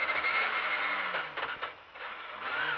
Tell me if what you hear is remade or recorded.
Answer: recorded